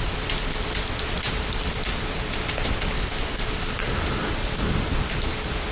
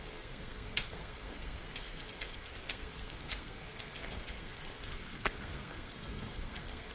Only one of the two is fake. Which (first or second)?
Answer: second